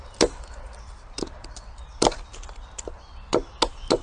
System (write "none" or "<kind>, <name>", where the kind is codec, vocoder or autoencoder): none